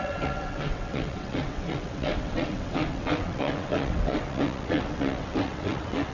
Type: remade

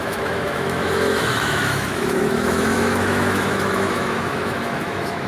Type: remade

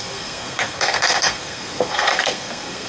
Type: remade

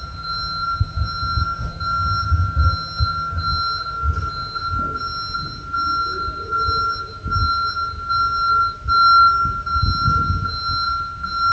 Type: recorded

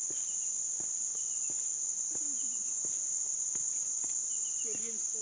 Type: recorded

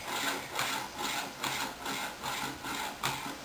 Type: recorded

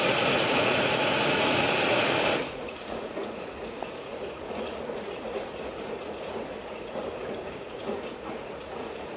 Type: remade